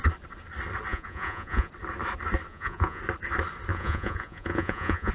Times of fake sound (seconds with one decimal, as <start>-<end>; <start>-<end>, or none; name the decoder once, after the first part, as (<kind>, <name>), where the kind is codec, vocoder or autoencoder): 0.9-1.7 (vocoder, Vocos); 2.5-3.0; 3.7-5.1